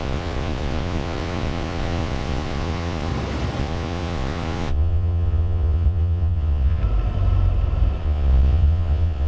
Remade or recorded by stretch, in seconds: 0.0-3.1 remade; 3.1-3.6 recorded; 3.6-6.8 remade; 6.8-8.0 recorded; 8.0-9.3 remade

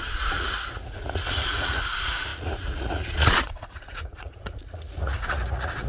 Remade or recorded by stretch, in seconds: 0.0-5.9 remade

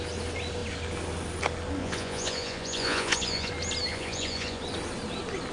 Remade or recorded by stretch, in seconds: 0.0-1.8 recorded; 1.8-3.5 remade; 3.5-3.9 recorded; 3.9-4.6 remade; 4.6-5.5 recorded

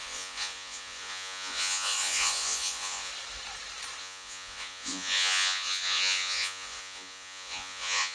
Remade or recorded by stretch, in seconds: 0.0-3.1 remade; 3.1-4.0 recorded; 4.0-8.1 remade

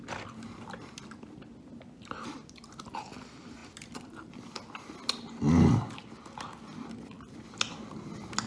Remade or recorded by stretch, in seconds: 0.0-8.5 recorded

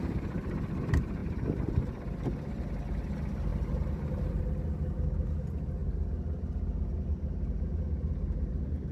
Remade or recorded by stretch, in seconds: 0.0-3.5 recorded; 3.5-4.4 remade; 4.4-8.9 recorded

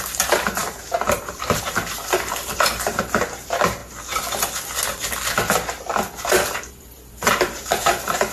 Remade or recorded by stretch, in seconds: 0.0-3.8 remade; 3.8-6.7 recorded; 6.7-8.3 remade